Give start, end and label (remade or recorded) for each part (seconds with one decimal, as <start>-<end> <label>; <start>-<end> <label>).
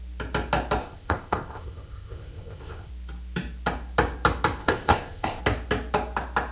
0.0-0.8 recorded; 0.8-2.9 remade; 2.9-4.6 recorded; 4.6-5.4 remade; 5.4-6.5 recorded